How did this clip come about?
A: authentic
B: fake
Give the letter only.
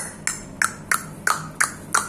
A